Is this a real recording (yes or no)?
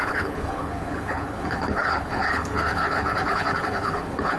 no